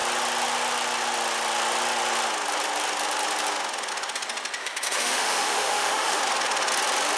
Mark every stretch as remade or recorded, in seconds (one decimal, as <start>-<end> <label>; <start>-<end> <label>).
0.0-4.6 recorded; 4.6-6.2 remade; 6.2-7.2 recorded